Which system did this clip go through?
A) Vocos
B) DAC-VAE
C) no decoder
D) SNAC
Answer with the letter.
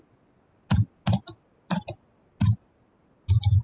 C